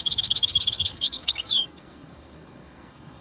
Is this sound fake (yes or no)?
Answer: yes